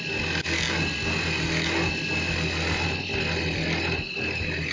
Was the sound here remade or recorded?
recorded